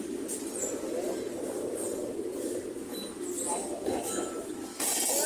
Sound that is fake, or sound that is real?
real